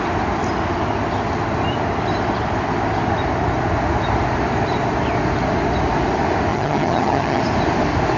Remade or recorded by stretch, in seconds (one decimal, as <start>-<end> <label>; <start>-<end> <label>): 0.0-6.5 recorded; 6.5-7.4 remade; 7.4-8.2 recorded